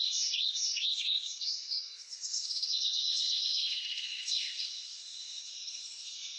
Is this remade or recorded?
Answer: remade